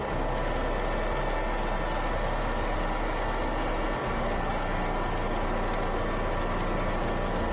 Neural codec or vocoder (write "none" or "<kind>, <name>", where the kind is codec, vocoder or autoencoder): none